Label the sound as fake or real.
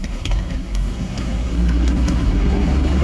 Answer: fake